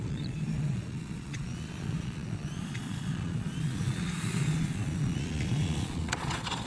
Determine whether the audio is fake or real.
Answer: fake